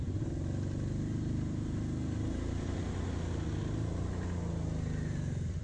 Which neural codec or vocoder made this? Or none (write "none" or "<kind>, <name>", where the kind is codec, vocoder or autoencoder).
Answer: none